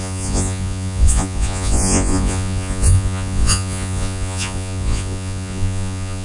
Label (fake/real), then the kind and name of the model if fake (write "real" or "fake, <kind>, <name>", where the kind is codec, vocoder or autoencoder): fake, vocoder, Vocos